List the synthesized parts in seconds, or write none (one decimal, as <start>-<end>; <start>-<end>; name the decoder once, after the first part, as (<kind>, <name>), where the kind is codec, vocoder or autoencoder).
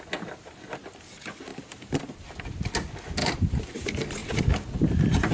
1.5-2.1 (vocoder, BigVGAN v2); 3.2-3.7